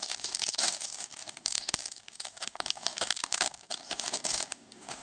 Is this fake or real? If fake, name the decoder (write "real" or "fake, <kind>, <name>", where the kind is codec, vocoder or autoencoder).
fake, codec, DAC